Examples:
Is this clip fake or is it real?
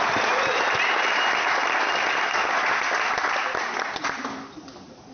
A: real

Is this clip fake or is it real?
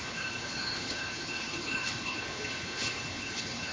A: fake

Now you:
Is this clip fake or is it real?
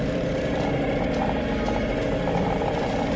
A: real